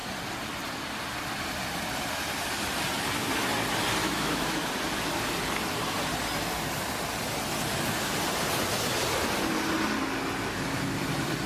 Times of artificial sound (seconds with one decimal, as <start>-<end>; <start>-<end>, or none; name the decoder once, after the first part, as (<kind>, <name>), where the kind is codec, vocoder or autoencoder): 4.0-4.7 (autoencoder, DAC-VAE)